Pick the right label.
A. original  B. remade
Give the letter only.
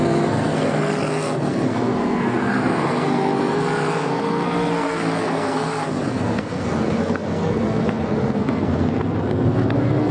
B